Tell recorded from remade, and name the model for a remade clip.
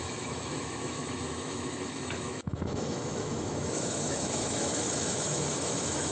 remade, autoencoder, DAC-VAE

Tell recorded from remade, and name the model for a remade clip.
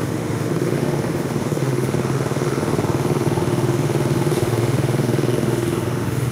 remade, autoencoder, DAC-VAE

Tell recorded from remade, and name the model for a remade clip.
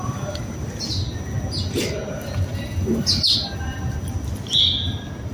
recorded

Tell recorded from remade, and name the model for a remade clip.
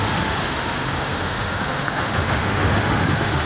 remade, autoencoder, DAC-VAE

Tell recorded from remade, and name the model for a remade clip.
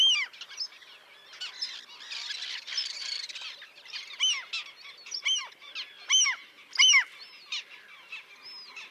recorded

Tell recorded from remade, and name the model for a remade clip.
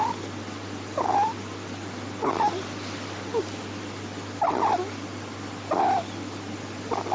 recorded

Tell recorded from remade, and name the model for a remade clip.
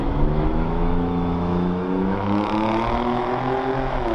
remade, autoencoder, DAC-VAE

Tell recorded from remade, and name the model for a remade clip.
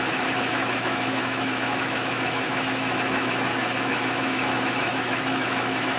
remade, autoencoder, DAC-VAE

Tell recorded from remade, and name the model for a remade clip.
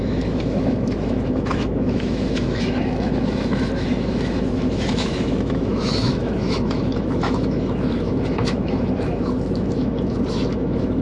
remade, autoencoder, DAC-VAE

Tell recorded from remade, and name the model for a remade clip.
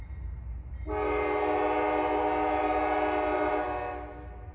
recorded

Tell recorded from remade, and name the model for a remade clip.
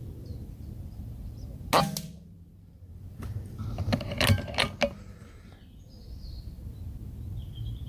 recorded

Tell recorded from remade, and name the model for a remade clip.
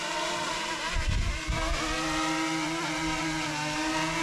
recorded